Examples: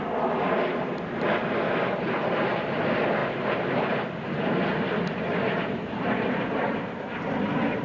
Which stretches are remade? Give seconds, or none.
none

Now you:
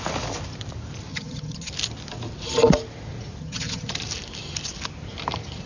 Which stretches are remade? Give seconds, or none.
1.1-1.7 (vocoder, HiFi-GAN); 3.4-3.9

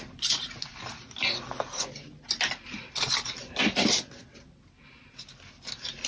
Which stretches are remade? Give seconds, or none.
none

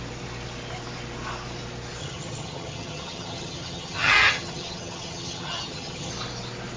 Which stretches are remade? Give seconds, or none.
2.0-6.1 (vocoder, HiFi-GAN)